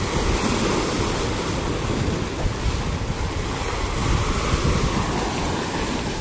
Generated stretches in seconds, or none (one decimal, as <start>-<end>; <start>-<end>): none